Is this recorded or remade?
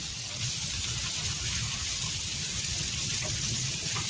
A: recorded